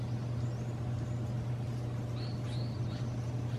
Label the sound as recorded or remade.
recorded